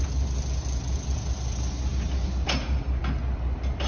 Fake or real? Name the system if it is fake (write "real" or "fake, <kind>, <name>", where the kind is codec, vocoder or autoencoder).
real